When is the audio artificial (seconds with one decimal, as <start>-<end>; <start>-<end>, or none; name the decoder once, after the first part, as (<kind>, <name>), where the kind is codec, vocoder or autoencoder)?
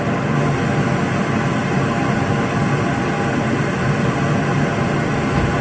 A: none